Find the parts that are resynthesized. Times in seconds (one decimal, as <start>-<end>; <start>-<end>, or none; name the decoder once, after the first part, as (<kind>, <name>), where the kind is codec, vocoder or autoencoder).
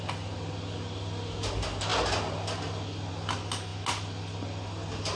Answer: none